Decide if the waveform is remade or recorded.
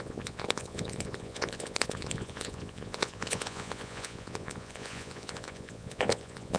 remade